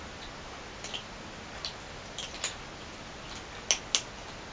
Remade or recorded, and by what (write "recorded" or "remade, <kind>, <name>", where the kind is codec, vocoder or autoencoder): recorded